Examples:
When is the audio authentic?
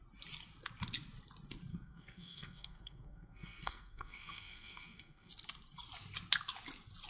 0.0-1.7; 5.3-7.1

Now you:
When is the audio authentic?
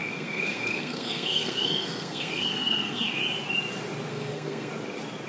3.2-4.1; 4.7-5.3